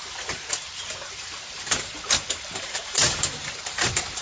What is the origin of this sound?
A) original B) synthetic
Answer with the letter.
B